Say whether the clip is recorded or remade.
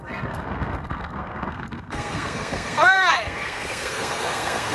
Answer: remade